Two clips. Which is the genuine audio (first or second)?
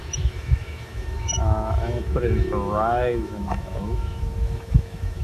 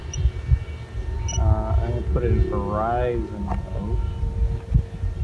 second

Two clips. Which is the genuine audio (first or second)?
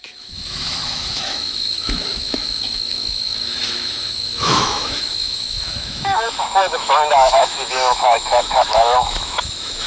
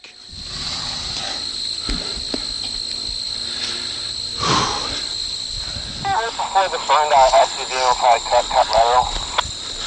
second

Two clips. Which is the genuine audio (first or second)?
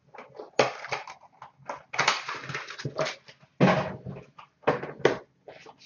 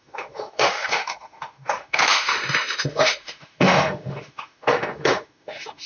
first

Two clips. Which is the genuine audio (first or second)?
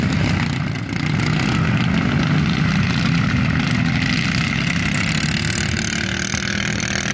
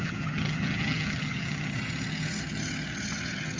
first